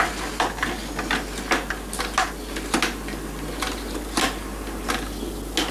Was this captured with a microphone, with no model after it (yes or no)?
yes